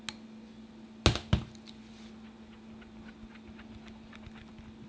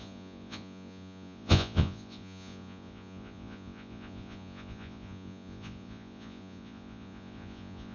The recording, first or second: first